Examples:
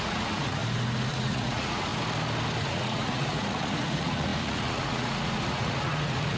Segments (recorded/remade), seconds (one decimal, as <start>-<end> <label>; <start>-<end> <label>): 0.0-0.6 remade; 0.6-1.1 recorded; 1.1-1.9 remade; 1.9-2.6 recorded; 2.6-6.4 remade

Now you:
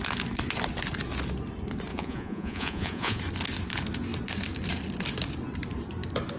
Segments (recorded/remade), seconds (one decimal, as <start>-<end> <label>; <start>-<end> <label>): 0.0-1.9 recorded; 1.9-3.2 remade; 3.2-6.4 recorded

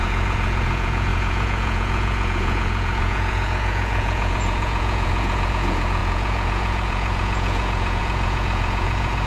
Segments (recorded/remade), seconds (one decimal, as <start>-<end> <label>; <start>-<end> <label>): 0.0-9.3 remade